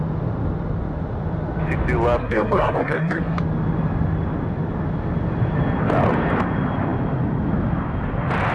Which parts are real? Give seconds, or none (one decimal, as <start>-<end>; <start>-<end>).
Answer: 0.0-2.2; 3.4-8.5